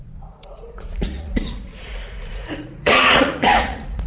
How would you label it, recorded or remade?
remade